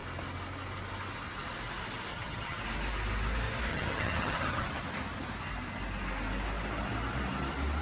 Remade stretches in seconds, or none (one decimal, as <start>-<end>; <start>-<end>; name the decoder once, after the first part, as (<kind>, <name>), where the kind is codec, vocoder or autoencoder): 2.1-2.6 (vocoder, HiFi-GAN); 3.7-4.7